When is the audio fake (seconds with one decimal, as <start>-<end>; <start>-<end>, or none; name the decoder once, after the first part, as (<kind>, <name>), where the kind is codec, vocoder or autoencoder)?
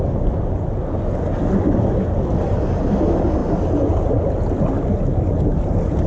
none